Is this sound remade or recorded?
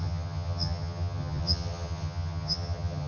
remade